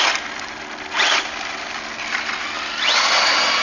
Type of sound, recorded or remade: recorded